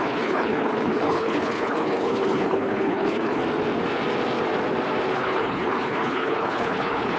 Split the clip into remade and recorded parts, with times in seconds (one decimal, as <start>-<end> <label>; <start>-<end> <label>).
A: 0.0-3.4 remade; 3.4-5.1 recorded; 5.1-7.2 remade